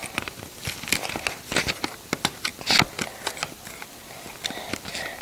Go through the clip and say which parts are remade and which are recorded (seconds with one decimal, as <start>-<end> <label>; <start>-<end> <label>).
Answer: 0.0-5.2 recorded

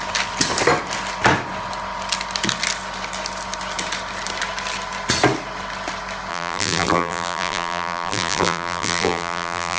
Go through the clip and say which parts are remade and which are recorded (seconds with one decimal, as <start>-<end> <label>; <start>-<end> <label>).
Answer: 0.0-6.3 recorded; 6.3-9.8 remade

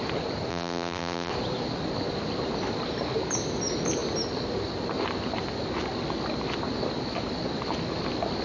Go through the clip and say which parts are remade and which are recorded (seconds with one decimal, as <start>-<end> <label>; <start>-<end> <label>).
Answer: 0.0-0.5 recorded; 0.5-1.3 remade; 1.3-8.4 recorded